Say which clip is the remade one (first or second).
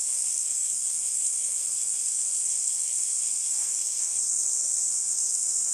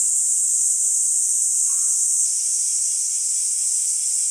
first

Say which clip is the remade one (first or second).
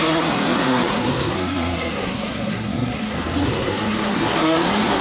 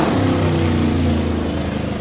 first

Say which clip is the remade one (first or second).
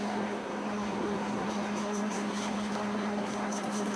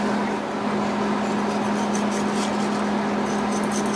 first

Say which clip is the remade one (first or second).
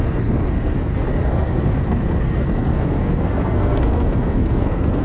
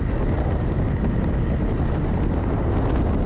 first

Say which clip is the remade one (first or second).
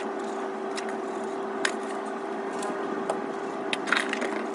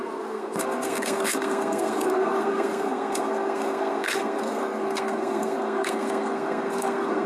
second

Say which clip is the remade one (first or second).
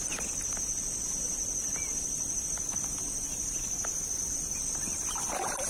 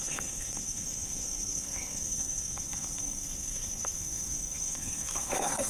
second